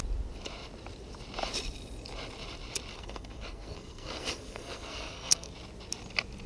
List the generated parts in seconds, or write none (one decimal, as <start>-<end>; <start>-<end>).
2.9-5.5